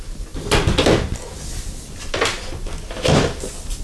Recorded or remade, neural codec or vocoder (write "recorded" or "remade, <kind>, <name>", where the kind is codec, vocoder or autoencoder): recorded